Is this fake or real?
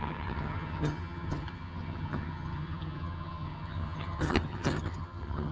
fake